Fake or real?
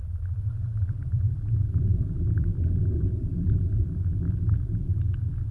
fake